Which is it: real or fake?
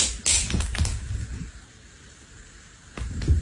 real